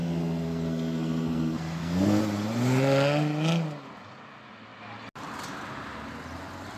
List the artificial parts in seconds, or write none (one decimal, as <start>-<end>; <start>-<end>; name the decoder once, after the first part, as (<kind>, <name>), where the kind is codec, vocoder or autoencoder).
0.0-2.2 (codec, SNAC)